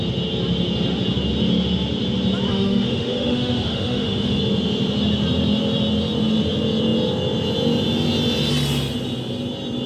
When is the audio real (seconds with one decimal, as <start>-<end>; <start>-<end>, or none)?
0.0-2.5; 4.4-9.9